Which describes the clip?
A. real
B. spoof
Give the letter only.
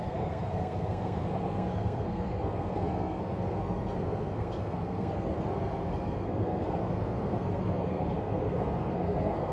B